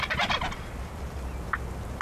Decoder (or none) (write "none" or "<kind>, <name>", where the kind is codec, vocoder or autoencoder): none